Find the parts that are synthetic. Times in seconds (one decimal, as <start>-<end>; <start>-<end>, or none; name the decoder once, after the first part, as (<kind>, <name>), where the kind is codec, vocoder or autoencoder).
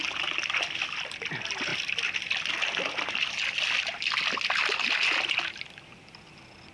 none